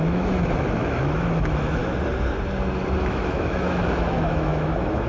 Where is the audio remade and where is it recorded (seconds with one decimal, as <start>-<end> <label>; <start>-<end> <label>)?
0.0-1.8 remade; 1.8-3.0 recorded; 3.0-5.1 remade